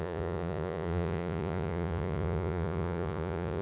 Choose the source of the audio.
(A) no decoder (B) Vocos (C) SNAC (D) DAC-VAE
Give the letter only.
B